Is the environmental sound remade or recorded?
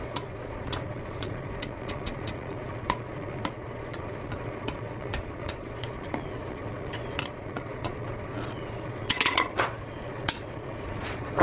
remade